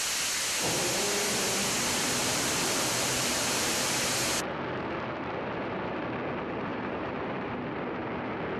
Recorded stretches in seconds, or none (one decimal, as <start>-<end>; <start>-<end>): 0.0-2.2; 4.0-6.7; 7.5-8.6